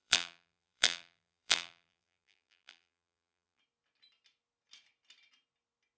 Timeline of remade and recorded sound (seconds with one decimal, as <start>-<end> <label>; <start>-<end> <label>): 0.0-3.6 remade; 3.6-6.0 recorded